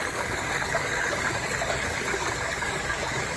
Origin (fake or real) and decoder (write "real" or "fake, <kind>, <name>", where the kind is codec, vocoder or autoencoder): fake, codec, DAC